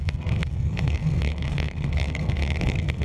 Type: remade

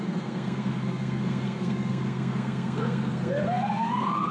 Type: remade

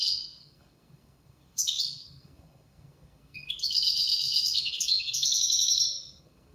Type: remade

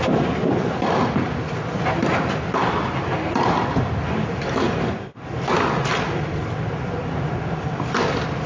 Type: recorded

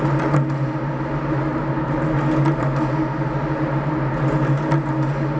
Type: recorded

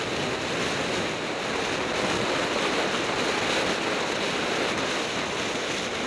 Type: recorded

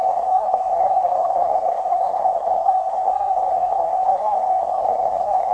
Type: remade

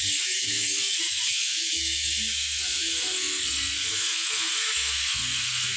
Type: remade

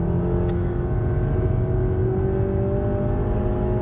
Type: recorded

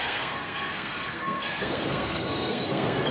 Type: remade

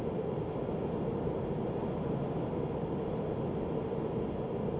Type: recorded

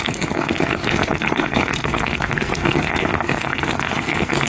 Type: remade